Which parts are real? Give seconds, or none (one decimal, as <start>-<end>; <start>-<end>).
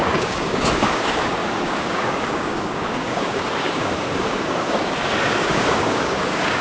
none